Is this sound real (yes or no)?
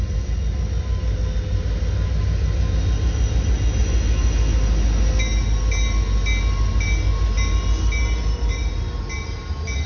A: yes